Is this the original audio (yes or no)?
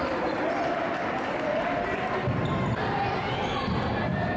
yes